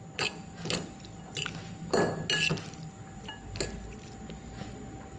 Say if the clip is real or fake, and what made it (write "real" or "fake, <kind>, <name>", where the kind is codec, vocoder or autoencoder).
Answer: real